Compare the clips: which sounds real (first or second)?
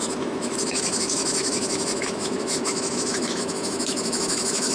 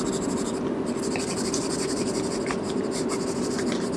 second